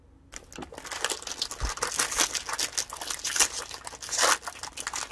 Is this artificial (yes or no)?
no